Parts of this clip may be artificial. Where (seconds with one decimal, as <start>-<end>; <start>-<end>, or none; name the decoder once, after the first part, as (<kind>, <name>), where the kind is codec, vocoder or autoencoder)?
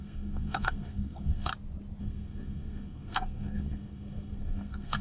0.0-1.5 (codec, SNAC); 2.0-5.0